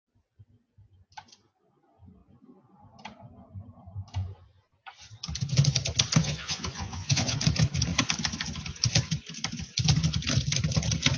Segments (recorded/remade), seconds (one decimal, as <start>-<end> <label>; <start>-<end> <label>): 0.0-6.2 recorded; 6.2-7.4 remade; 7.4-11.2 recorded